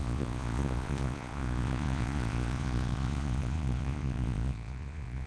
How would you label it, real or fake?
fake